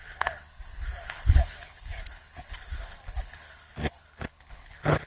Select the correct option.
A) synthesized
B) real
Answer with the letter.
A